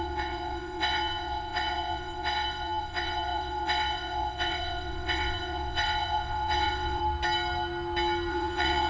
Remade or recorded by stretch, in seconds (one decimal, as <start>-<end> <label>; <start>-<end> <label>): 0.0-7.0 remade; 7.0-8.3 recorded; 8.3-8.9 remade